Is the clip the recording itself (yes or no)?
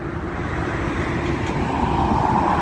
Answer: yes